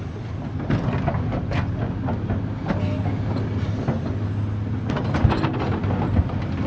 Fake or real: real